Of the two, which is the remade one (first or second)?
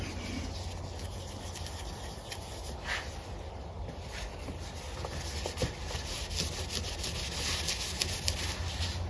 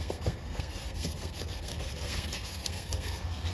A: second